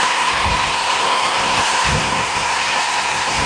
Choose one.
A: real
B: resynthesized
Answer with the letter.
B